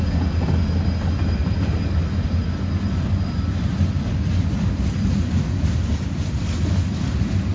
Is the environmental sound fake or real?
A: real